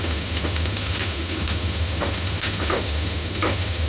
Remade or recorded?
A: remade